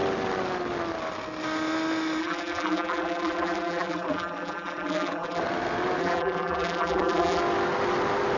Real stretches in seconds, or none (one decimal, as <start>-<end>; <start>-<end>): 0.0-2.2; 5.4-6.0; 7.4-8.4